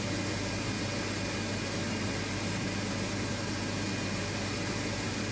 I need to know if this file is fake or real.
real